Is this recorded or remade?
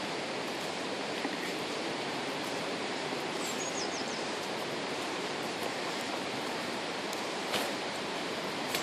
remade